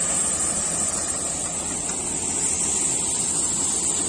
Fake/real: real